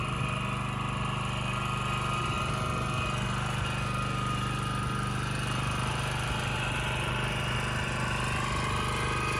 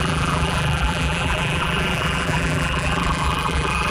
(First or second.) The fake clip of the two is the second